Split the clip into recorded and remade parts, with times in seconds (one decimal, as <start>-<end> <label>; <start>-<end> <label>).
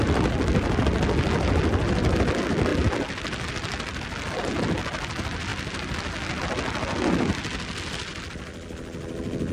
0.0-9.5 recorded